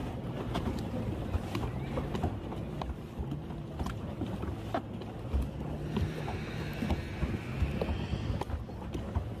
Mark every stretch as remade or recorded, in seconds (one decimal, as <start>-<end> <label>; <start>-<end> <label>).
0.0-9.4 recorded